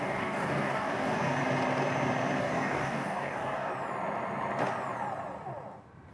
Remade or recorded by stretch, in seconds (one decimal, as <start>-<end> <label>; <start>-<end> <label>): 0.0-1.3 remade; 1.3-2.4 recorded; 2.4-3.7 remade; 3.7-6.1 recorded